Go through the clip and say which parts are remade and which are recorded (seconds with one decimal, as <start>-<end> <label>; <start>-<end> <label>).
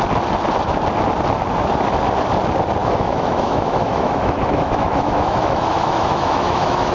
0.0-2.8 recorded; 2.8-6.9 remade